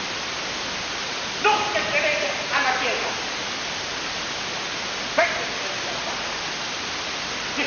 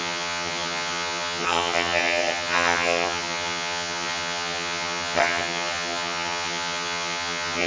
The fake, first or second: second